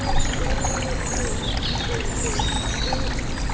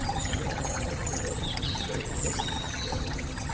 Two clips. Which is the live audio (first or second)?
first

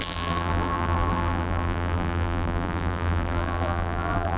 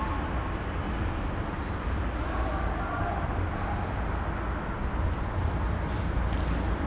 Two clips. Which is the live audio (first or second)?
second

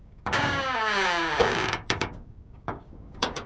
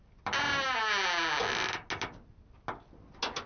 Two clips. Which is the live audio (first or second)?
second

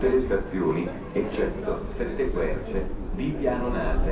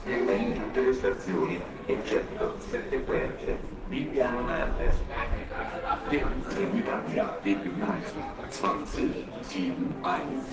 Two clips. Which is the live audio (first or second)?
first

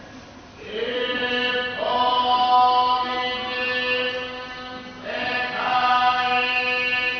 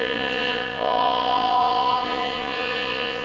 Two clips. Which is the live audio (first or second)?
first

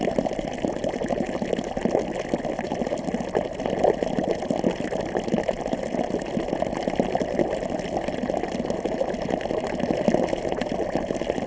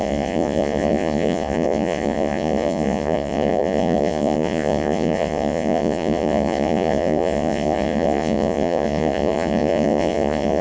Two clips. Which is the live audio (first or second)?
first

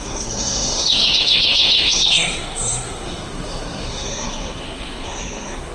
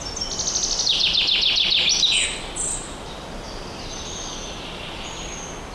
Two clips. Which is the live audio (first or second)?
second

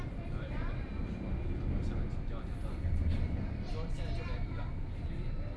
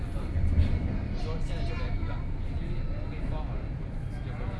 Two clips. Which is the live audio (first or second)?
second